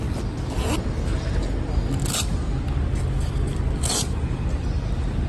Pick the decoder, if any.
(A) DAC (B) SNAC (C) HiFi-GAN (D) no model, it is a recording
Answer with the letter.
D